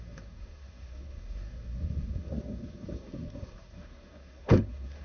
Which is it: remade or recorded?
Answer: remade